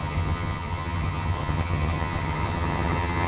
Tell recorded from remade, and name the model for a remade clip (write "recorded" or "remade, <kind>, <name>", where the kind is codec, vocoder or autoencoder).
remade, vocoder, HiFi-GAN